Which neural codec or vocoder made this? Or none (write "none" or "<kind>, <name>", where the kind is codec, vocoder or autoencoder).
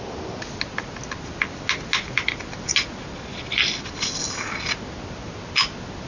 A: none